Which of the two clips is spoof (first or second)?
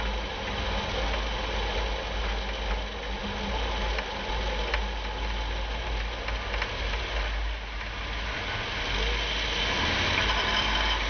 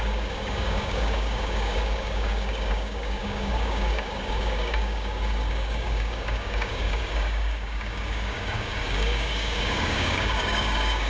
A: second